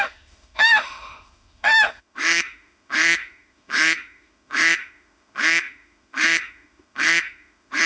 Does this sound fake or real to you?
fake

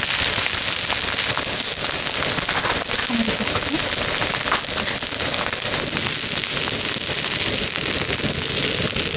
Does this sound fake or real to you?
real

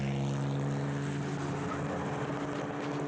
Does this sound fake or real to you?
real